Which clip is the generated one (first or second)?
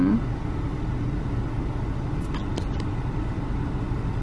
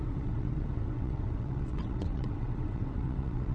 second